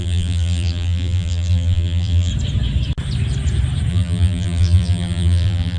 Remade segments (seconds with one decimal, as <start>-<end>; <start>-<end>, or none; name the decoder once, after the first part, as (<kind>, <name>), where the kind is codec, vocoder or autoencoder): 0.0-2.3 (vocoder, BigVGAN v2); 3.9-5.8